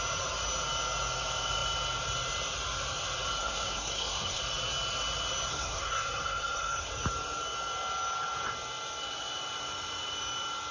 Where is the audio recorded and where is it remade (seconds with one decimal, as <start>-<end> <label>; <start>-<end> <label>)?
0.0-3.4 recorded; 3.4-4.4 remade; 4.4-5.5 recorded; 5.5-6.9 remade; 6.9-10.7 recorded